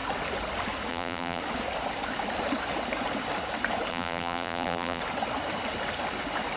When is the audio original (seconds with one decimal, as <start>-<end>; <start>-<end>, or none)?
0.0-0.9; 1.4-3.9; 5.0-6.6